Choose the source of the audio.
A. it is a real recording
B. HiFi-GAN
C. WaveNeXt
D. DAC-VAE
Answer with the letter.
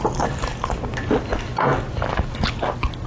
A